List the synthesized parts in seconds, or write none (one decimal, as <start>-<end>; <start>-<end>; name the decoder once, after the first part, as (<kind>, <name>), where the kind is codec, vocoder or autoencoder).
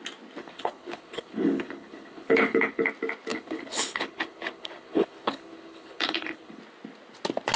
0.4-2.9 (codec, HILCodec); 3.3-6.6